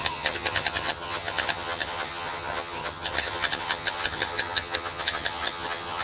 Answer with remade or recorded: remade